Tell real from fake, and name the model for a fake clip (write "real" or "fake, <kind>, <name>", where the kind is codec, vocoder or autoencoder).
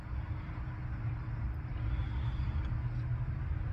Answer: real